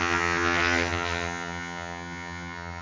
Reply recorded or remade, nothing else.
remade